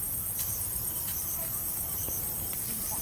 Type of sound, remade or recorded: remade